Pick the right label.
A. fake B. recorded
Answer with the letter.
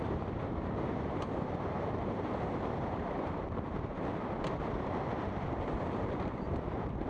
A